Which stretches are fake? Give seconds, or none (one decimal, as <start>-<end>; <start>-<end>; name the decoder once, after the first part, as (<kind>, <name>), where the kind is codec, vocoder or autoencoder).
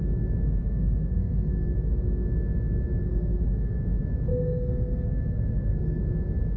0.6-1.7 (codec, SNAC); 3.0-3.8; 4.3-6.0